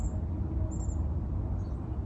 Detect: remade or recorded recorded